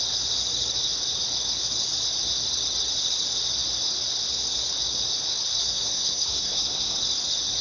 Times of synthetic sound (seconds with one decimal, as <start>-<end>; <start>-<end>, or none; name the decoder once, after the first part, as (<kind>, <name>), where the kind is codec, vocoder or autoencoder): 5.6-7.0 (codec, SNAC)